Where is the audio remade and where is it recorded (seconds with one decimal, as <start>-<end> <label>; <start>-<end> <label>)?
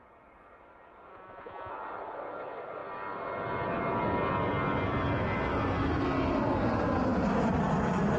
0.0-1.1 recorded; 1.1-1.7 remade; 1.7-8.2 recorded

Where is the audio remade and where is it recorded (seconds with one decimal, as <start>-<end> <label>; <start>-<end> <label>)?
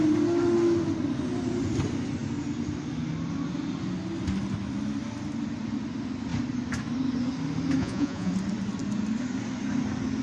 0.0-7.8 recorded; 7.8-8.3 remade; 8.3-10.2 recorded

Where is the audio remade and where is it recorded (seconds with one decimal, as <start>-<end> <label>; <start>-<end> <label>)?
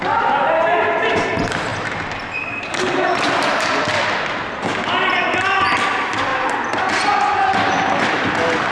0.0-8.7 recorded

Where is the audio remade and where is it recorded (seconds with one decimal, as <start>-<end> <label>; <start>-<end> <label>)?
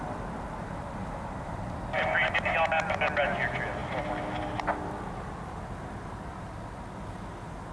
0.0-0.6 recorded; 0.6-1.6 remade; 1.6-7.7 recorded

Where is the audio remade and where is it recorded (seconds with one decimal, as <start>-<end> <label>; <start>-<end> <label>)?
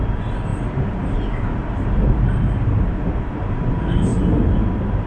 0.0-0.5 recorded; 0.5-3.6 remade; 3.6-4.1 recorded; 4.1-5.1 remade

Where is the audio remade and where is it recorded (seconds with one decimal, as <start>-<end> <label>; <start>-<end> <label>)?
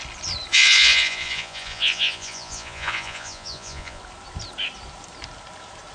0.0-0.5 recorded; 0.5-4.0 remade; 4.0-5.9 recorded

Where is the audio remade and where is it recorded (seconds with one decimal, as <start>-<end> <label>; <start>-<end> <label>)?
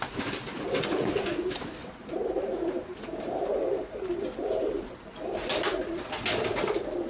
0.0-1.8 recorded; 1.8-5.0 remade; 5.0-7.1 recorded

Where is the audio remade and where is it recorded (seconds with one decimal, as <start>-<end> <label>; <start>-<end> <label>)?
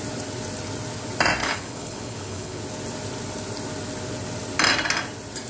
0.0-1.4 recorded; 1.4-2.6 remade; 2.6-5.5 recorded